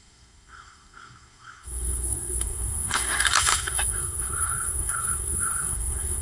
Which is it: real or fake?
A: fake